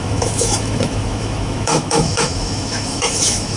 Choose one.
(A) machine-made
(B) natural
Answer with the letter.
A